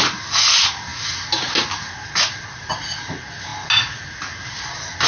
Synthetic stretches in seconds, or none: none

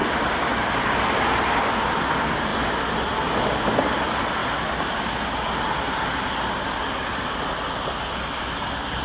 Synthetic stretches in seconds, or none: none

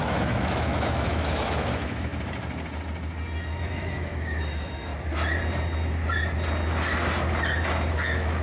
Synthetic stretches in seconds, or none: 0.0-2.1 (autoencoder, DAC-VAE); 3.6-4.9; 7.9-8.4

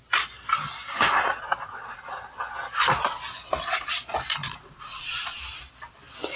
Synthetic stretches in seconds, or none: 1.6-2.3 (vocoder, Vocos); 4.4-5.0

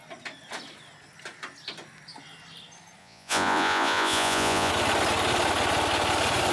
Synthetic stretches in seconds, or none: 3.0-4.7 (vocoder, Vocos)

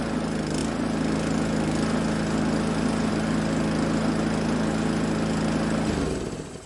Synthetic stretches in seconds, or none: none

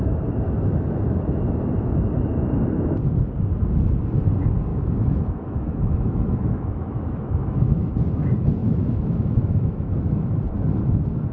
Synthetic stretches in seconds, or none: 4.7-7.9 (autoencoder, DAC-VAE); 8.6-10.4

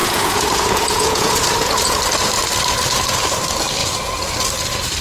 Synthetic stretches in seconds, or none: 0.0-2.0 (vocoder, Vocos); 3.8-4.3